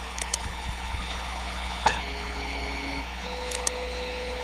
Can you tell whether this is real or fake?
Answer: fake